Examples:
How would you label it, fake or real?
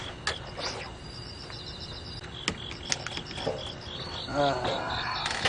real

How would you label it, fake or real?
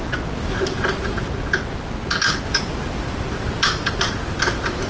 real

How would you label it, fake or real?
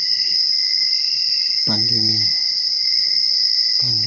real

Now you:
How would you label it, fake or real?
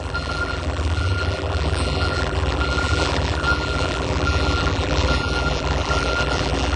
fake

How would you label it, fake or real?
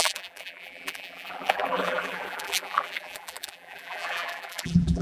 fake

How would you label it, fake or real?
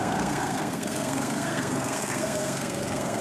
fake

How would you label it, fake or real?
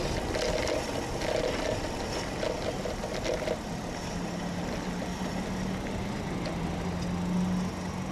real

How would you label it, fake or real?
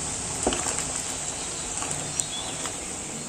real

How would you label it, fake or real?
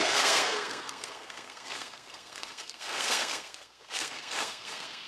fake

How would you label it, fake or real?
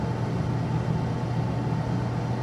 real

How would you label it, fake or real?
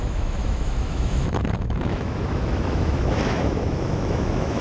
fake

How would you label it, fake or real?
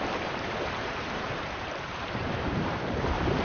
fake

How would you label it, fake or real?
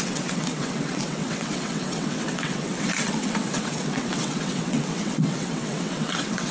fake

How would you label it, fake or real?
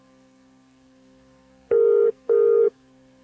fake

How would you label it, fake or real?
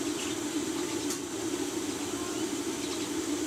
real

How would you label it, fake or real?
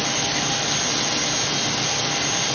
real